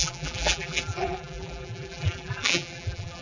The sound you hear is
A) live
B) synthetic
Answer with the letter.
B